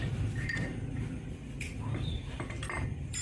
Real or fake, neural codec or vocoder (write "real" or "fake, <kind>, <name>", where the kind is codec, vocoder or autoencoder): fake, vocoder, BigVGAN v2